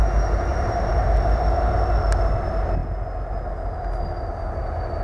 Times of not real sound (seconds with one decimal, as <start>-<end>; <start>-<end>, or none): 0.5-1.0